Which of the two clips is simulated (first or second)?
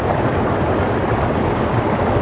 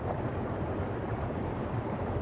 second